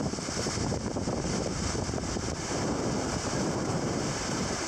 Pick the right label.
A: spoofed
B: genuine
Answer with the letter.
A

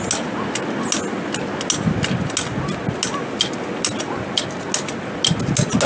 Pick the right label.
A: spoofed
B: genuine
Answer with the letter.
B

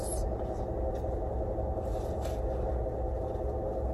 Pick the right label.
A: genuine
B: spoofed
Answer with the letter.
A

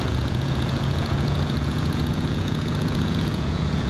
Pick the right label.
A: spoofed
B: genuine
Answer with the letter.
A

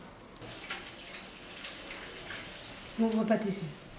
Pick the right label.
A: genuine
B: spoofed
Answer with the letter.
A